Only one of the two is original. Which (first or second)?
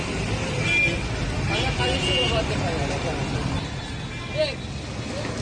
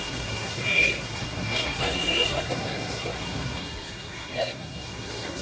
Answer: first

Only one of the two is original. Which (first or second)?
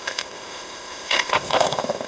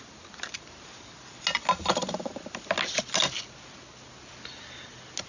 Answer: second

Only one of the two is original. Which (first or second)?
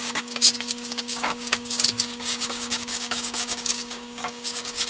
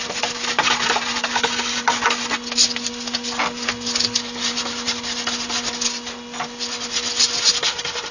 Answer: second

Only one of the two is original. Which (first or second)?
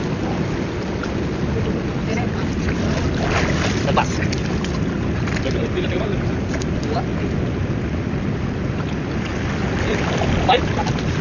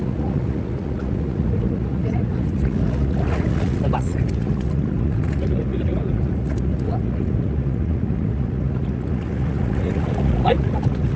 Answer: first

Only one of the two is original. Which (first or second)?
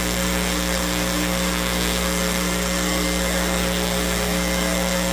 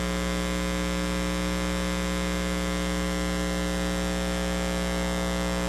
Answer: second